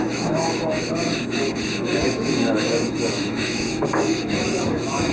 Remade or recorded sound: remade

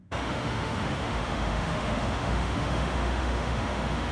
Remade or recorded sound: remade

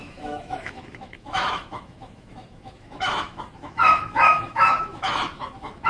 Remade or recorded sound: remade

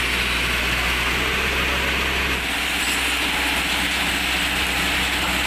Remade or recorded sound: recorded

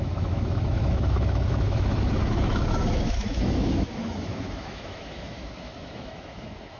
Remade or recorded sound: remade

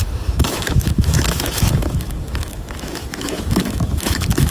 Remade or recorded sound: remade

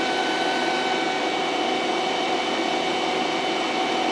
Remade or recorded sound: recorded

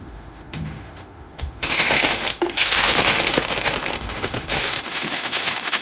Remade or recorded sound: remade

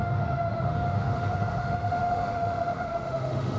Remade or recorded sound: remade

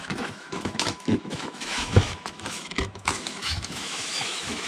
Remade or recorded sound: remade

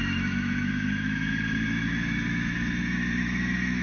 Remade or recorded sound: remade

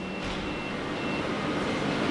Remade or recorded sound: recorded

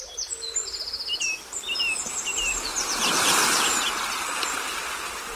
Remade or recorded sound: recorded